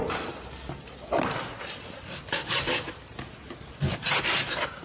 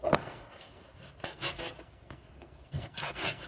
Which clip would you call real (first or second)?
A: first